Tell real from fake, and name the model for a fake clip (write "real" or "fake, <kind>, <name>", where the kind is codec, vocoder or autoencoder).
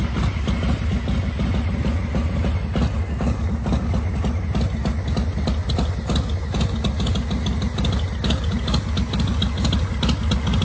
real